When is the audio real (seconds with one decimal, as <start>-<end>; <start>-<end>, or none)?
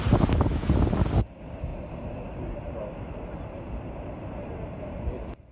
0.0-1.7; 5.0-5.5